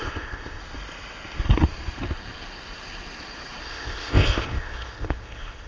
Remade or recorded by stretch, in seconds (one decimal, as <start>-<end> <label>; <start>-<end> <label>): 0.0-0.6 remade; 0.6-3.6 recorded; 3.6-5.7 remade